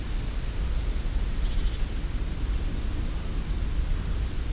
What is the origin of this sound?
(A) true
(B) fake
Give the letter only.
A